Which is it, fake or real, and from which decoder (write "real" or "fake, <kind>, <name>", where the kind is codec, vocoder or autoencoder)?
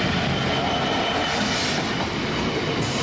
real